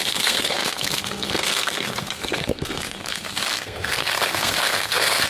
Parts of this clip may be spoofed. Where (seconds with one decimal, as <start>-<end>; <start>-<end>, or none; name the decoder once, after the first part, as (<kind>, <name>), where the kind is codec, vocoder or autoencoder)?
0.0-5.3 (codec, SNAC)